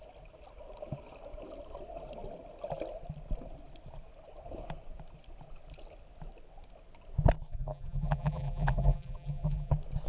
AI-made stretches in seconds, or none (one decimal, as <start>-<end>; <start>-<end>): 7.5-9.7